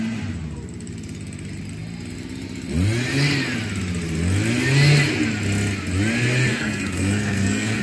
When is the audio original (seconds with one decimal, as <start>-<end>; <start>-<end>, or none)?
0.0-6.5

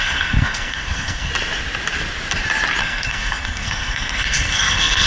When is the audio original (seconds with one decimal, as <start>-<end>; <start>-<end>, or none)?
1.3-2.8

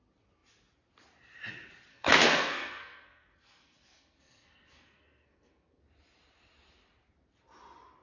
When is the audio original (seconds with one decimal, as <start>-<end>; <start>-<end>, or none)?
0.0-1.9; 5.8-8.0

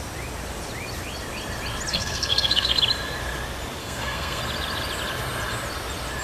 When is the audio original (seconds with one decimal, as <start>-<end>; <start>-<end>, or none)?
0.0-1.9; 2.8-3.8; 4.4-6.2

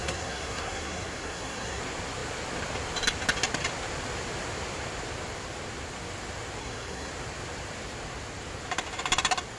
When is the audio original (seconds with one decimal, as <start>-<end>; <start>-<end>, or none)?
1.8-6.6; 7.1-9.6